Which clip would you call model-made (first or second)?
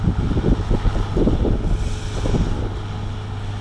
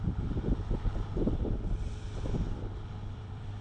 second